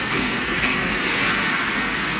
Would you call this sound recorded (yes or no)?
no